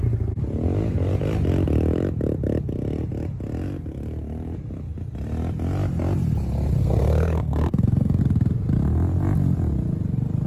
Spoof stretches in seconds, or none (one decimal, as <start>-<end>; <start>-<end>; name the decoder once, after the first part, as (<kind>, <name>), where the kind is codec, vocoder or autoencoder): 6.8-8.2 (codec, SNAC)